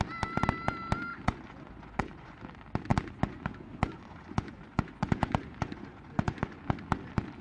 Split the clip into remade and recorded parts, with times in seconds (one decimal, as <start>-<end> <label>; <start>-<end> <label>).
0.0-1.1 recorded; 1.1-2.4 remade; 2.4-2.9 recorded; 2.9-6.6 remade; 6.6-7.4 recorded